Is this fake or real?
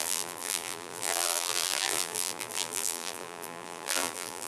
fake